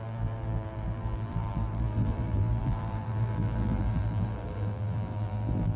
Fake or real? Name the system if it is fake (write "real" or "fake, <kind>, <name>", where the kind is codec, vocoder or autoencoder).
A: fake, vocoder, BigVGAN v2